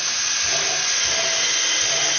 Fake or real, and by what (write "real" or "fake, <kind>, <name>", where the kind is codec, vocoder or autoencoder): real